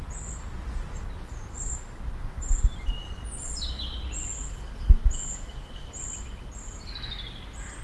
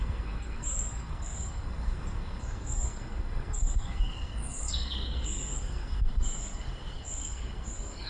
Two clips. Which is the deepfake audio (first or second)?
second